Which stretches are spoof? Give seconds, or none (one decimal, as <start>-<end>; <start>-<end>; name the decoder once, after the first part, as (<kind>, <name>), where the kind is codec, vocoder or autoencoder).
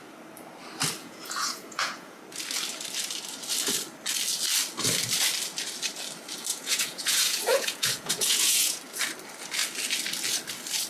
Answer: 1.0-2.2 (vocoder, Vocos); 6.5-8.8